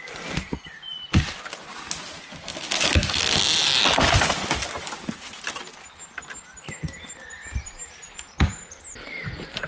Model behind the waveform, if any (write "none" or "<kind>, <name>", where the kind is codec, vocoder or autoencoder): none